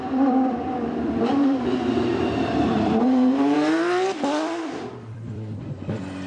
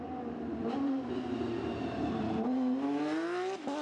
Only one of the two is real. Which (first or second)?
second